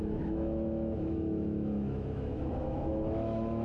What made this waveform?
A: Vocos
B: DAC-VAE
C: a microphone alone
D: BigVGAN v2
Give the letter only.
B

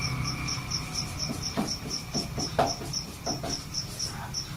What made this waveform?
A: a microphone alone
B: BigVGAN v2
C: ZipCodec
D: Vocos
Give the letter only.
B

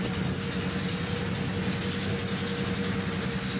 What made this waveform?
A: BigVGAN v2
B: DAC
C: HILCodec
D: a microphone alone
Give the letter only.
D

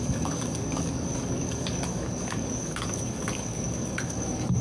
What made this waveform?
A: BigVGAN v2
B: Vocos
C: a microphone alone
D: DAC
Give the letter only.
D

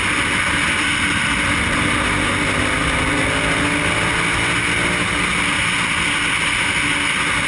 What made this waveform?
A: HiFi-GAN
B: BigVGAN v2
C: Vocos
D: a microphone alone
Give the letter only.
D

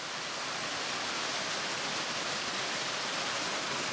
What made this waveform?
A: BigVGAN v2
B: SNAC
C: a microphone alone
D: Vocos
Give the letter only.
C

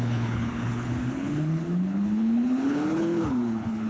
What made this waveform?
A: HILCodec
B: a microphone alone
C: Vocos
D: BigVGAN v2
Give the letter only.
A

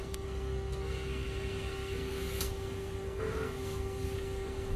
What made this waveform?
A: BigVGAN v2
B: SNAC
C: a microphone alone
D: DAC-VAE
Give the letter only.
B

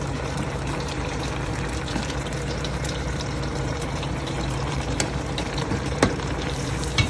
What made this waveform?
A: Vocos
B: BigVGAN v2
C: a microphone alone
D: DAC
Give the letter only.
B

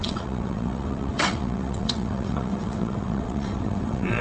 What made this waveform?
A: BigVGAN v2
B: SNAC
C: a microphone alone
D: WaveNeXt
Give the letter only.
D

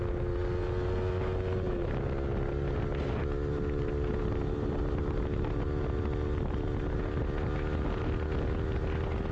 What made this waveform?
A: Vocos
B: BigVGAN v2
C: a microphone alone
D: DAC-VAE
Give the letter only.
C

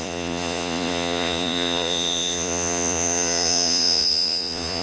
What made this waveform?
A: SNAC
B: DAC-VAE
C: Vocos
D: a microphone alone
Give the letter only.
C